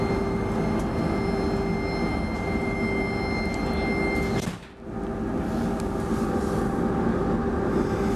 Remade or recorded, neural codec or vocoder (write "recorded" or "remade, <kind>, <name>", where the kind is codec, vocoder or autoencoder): recorded